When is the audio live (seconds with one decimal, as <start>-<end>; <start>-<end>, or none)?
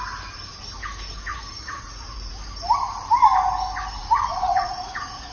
0.0-1.3; 2.3-4.0